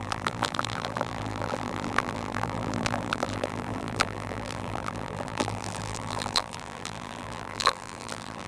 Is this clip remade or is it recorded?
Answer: remade